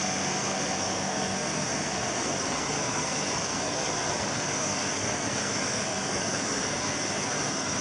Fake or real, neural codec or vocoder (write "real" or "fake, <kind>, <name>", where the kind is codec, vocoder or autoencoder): fake, codec, SNAC